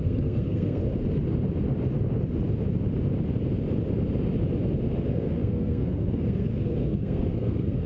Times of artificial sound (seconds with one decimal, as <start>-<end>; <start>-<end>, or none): 0.0-0.8; 5.1-7.9